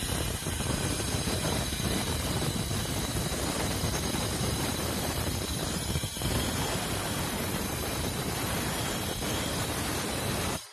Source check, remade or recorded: remade